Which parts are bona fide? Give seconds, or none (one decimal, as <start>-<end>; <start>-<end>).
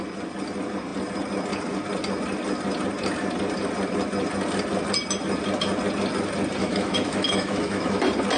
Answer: 0.0-6.6; 8.0-8.4